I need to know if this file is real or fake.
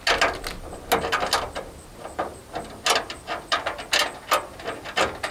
real